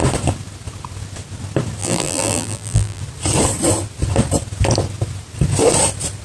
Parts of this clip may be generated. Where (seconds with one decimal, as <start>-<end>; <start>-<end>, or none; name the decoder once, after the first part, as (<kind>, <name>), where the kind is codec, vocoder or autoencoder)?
1.8-3.0 (vocoder, BigVGAN v2)